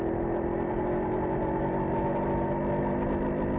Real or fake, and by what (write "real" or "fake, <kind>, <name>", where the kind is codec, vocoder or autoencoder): real